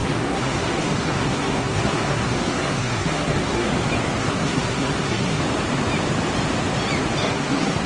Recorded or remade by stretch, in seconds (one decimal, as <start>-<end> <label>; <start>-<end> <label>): 0.0-3.7 remade; 3.7-4.2 recorded; 4.2-5.4 remade; 5.4-7.2 recorded; 7.2-7.9 remade

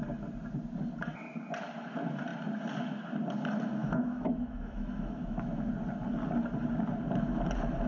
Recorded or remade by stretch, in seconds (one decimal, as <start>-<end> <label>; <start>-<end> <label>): 0.0-3.8 recorded; 3.8-5.7 remade; 5.7-7.9 recorded

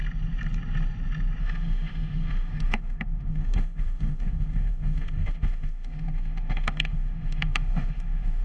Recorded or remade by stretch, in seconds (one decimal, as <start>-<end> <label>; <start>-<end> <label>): 0.0-1.4 recorded; 1.4-8.4 remade

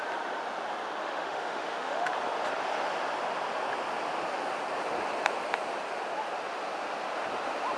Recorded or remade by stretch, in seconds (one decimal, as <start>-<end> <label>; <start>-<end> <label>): 0.0-1.0 recorded; 1.0-2.1 remade; 2.1-7.8 recorded